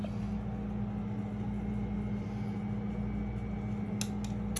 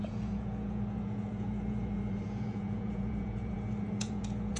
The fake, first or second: second